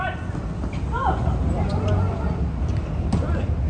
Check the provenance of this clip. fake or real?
real